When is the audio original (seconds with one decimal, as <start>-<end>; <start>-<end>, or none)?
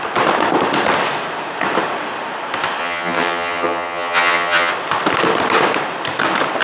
0.0-2.8; 4.7-6.6